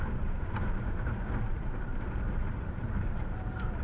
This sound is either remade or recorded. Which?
remade